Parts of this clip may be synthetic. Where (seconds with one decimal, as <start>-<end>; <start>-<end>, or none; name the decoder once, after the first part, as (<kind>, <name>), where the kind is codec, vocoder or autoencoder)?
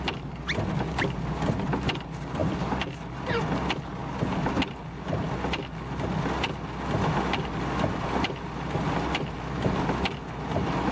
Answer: none